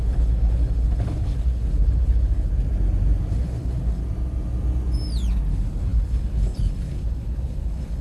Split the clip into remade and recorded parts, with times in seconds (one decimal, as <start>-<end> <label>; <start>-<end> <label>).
0.0-2.5 remade; 2.5-3.3 recorded; 3.3-4.0 remade; 4.0-5.5 recorded; 5.5-8.0 remade